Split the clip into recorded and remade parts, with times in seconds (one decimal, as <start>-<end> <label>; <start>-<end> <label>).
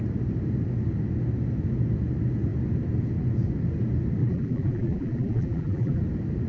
0.0-4.2 recorded; 4.2-6.0 remade; 6.0-6.5 recorded